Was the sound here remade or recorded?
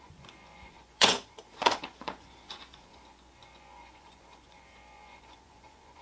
remade